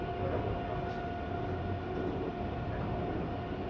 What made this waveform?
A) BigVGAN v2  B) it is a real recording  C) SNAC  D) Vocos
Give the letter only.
B